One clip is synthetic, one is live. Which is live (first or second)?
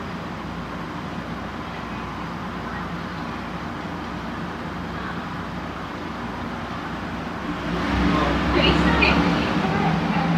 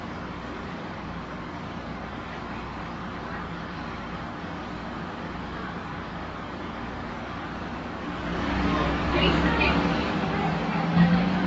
first